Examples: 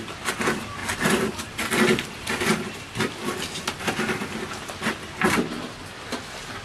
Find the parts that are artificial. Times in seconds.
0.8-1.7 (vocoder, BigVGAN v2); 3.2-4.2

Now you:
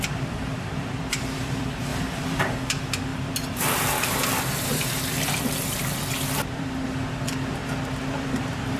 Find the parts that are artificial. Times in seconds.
0.0-7.6 (vocoder, BigVGAN v2); 8.1-8.8

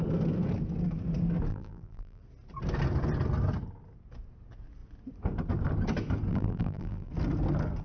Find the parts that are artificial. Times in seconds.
1.5-2.2 (vocoder, BigVGAN v2); 6.3-7.1

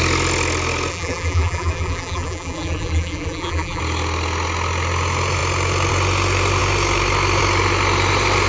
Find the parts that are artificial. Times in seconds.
0.9-3.8 (vocoder, BigVGAN v2)

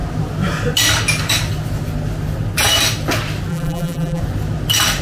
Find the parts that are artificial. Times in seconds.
3.5-4.2 (vocoder, BigVGAN v2)

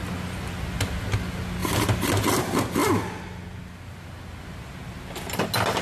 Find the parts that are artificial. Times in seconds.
1.6-2.1 (vocoder, BigVGAN v2)

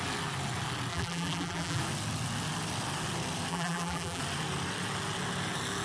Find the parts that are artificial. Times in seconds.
0.9-1.8 (vocoder, BigVGAN v2); 3.5-4.2

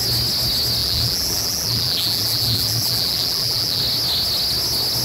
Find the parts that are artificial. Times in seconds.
0.8-3.8 (vocoder, BigVGAN v2)